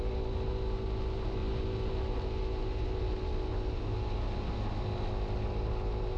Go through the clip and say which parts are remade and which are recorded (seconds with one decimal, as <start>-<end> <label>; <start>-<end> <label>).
0.0-6.2 recorded